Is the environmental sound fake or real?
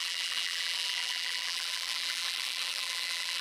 fake